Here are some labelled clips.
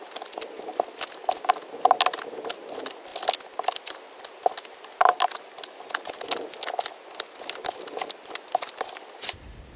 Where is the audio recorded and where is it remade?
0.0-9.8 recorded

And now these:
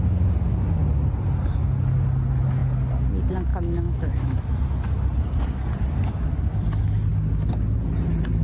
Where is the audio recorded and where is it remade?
0.0-3.5 recorded; 3.5-4.5 remade; 4.5-8.4 recorded

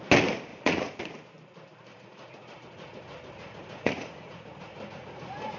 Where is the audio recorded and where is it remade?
0.0-0.5 recorded; 0.5-1.0 remade; 1.0-1.9 recorded; 1.9-5.6 remade

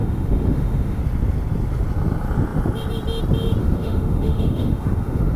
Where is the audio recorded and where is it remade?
0.0-1.0 remade; 1.0-3.6 recorded; 3.6-5.4 remade

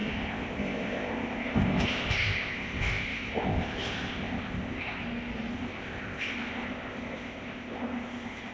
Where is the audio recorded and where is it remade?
0.0-5.0 remade; 5.0-5.5 recorded; 5.5-8.5 remade

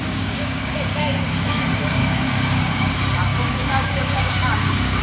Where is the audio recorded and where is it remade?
0.0-1.6 remade; 1.6-2.0 recorded; 2.0-2.9 remade; 2.9-3.3 recorded; 3.3-5.0 remade

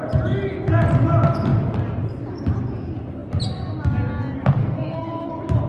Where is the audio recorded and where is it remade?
0.0-4.6 recorded; 4.6-5.3 remade; 5.3-5.7 recorded